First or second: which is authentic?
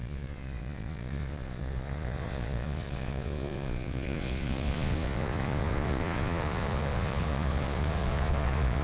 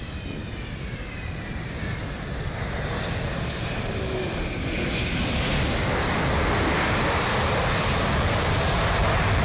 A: second